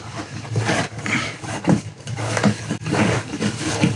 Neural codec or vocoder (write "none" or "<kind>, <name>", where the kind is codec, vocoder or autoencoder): codec, DAC